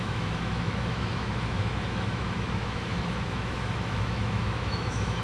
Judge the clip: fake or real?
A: fake